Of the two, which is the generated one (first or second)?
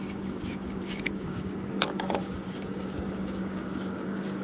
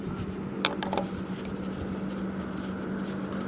first